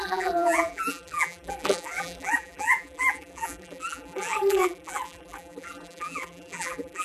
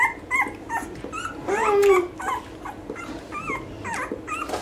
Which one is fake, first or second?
first